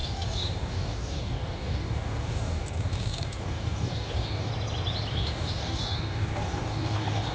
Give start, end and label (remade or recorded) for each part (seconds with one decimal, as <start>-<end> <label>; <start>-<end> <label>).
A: 0.0-4.5 remade; 4.5-5.1 recorded; 5.1-7.3 remade

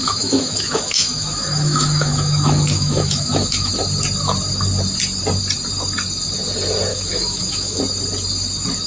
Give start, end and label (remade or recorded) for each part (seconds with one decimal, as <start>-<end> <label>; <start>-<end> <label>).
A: 0.0-3.7 remade; 3.7-6.9 recorded; 6.9-7.8 remade; 7.8-8.9 recorded